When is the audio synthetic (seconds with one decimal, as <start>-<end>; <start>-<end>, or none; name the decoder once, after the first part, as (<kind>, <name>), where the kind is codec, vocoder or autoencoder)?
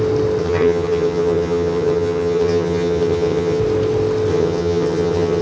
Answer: 0.4-3.6 (vocoder, HiFi-GAN); 4.3-5.4